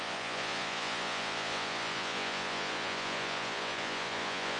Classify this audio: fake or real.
fake